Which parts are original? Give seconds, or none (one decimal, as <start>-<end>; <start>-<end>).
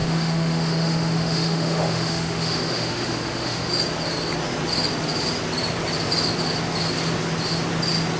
3.7-8.2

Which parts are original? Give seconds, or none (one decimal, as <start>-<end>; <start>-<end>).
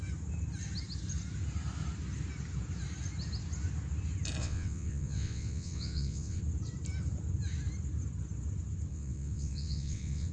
0.0-4.4; 6.4-8.9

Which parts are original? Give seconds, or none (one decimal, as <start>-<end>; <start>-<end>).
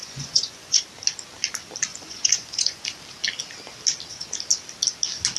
0.8-1.9; 3.0-5.4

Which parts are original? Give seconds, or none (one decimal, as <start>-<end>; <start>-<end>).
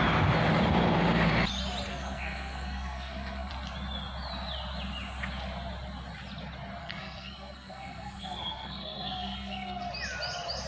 0.0-1.9; 3.5-6.8; 9.9-10.7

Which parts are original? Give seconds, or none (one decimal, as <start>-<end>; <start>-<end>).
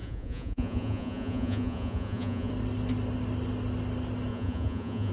2.5-4.3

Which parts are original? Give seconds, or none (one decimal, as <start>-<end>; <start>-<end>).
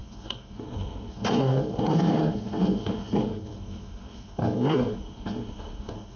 none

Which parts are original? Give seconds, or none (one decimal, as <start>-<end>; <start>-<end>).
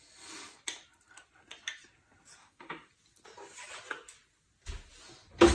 0.0-2.4; 2.9-5.5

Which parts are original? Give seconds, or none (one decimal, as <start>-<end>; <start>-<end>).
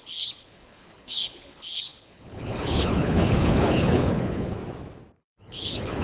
4.6-5.2